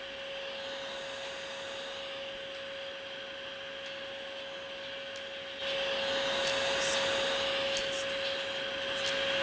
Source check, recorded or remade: recorded